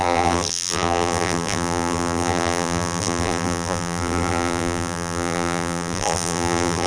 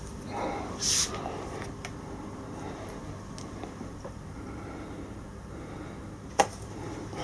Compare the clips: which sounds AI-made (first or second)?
first